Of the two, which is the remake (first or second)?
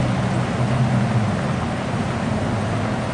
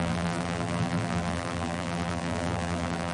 second